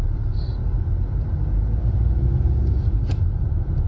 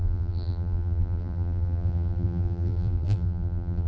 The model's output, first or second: second